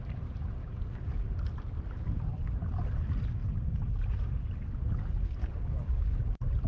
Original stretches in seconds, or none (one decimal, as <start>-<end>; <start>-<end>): 0.0-0.6; 1.2-5.4; 6.3-6.7